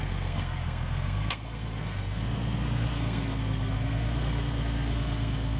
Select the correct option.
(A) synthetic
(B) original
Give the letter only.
A